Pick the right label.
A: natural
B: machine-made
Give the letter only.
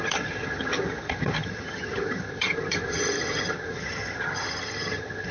B